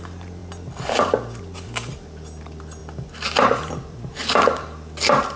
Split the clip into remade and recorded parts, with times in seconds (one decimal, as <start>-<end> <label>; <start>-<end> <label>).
0.0-0.4 remade; 0.4-2.4 recorded; 2.4-5.4 remade